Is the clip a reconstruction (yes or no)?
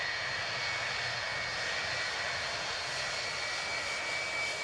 no